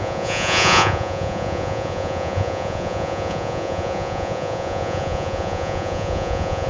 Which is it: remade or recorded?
remade